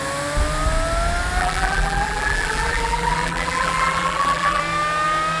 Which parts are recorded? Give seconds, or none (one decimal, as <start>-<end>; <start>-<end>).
0.0-1.4; 4.6-5.4

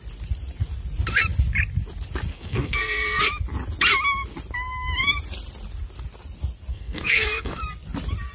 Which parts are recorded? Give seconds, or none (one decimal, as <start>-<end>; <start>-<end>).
0.0-2.3; 3.2-6.7; 7.6-8.3